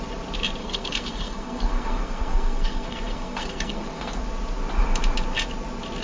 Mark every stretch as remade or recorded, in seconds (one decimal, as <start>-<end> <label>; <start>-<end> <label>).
0.0-0.6 recorded; 0.6-4.2 remade; 4.2-6.0 recorded